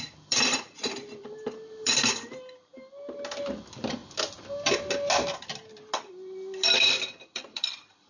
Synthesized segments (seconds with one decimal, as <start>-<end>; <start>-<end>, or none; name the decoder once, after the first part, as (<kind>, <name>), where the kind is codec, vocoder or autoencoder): 0.0-2.7 (vocoder, BigVGAN v2); 3.4-4.0; 6.1-8.1